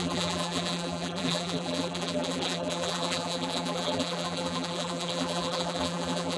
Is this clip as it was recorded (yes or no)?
no